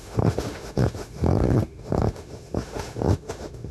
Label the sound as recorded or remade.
remade